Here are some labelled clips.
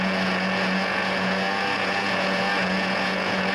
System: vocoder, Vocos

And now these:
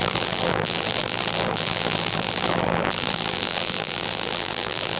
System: vocoder, BigVGAN v2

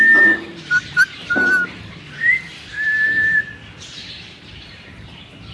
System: none